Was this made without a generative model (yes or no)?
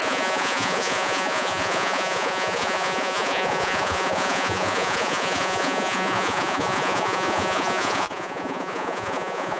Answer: no